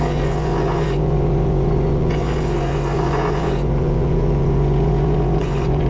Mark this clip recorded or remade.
remade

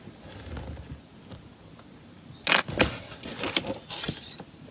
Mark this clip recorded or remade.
recorded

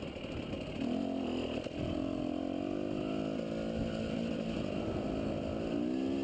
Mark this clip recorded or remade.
recorded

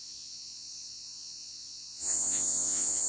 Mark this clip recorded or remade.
remade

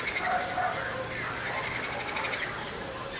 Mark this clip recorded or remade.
recorded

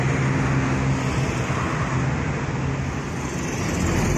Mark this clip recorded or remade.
recorded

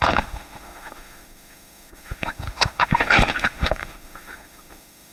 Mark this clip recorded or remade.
remade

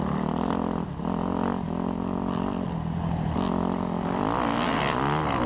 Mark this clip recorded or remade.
recorded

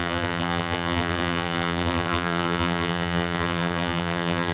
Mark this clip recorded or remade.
remade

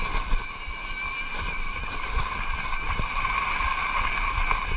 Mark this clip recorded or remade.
recorded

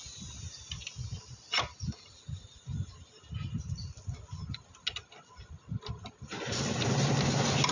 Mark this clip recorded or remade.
recorded